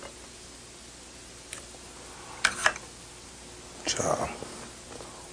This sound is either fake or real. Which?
real